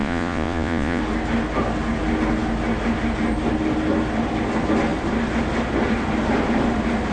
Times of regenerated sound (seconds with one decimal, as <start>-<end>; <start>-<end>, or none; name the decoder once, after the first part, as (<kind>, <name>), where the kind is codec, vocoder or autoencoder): 0.0-1.0 (vocoder, Vocos)